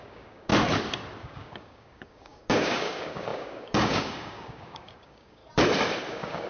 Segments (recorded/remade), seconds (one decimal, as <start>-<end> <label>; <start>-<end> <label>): 0.0-0.5 remade; 0.5-1.2 recorded; 1.2-5.4 remade; 5.4-6.1 recorded; 6.1-6.5 remade